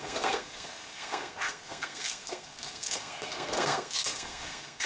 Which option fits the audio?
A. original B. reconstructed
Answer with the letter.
B